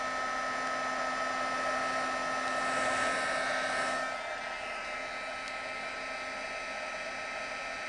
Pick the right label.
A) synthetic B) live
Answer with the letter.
B